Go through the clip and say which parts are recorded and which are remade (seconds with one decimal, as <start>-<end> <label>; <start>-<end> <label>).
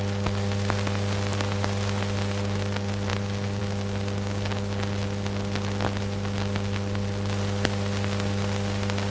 0.0-9.1 recorded